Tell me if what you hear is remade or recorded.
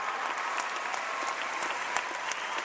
recorded